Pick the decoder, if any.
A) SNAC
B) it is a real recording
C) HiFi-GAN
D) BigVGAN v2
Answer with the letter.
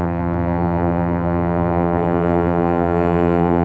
D